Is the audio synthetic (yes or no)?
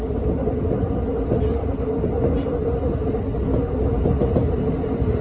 no